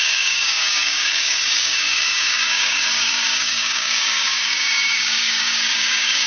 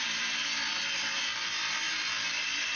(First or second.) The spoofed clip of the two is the first